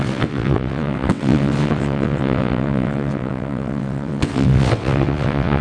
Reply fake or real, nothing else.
fake